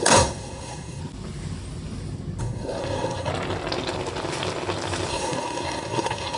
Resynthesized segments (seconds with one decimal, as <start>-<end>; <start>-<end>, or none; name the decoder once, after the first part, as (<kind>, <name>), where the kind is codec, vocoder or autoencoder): 0.0-1.0 (codec, SNAC); 2.4-3.3; 5.1-6.4